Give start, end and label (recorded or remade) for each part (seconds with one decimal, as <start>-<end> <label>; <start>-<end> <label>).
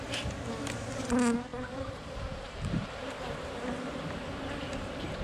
0.0-1.5 recorded; 1.5-4.0 remade; 4.0-5.2 recorded